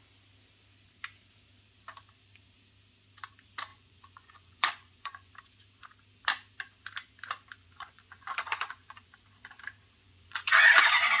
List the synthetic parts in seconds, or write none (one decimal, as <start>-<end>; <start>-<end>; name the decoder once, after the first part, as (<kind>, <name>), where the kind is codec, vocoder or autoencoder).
3.7-5.3 (vocoder, Vocos); 7.6-9.1; 10.0-10.7